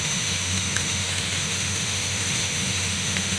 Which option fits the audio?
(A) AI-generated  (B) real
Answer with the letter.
A